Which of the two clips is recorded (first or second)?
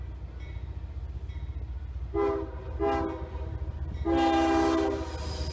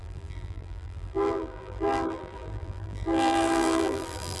first